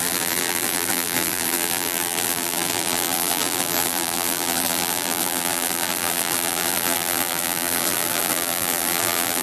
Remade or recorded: remade